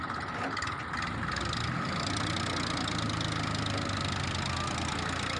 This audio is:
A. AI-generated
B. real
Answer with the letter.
B